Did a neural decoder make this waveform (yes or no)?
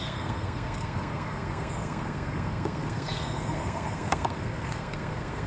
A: yes